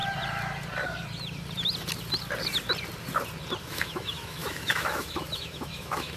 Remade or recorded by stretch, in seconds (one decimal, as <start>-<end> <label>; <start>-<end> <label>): 0.0-3.6 recorded; 3.6-6.2 remade